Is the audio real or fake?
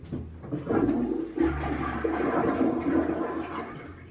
real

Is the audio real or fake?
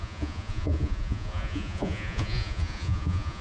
fake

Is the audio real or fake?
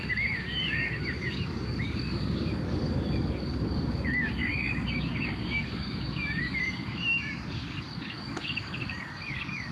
fake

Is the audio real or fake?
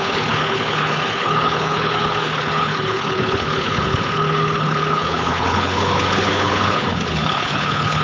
fake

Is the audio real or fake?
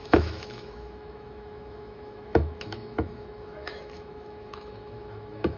fake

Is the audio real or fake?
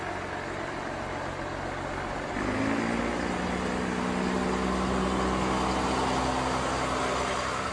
real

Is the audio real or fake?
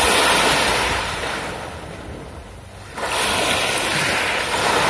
real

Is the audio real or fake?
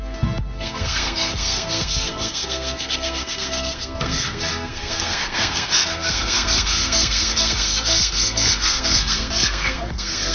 fake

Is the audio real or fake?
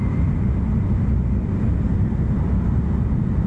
real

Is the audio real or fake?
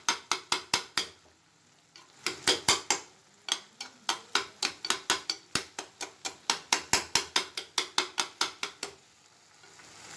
real